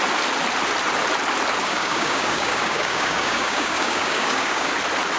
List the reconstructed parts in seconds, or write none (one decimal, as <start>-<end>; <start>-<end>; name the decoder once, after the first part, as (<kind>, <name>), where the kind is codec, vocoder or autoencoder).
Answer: 1.6-4.7 (codec, DAC)